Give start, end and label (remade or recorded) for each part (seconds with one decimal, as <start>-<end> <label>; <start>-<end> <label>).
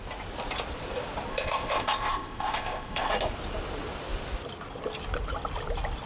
0.0-1.3 recorded; 1.3-3.1 remade; 3.1-6.1 recorded